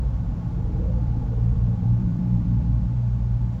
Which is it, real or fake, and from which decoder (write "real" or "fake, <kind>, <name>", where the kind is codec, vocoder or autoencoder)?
fake, vocoder, BigVGAN v2